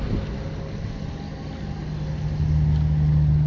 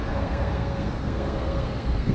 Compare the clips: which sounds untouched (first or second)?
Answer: first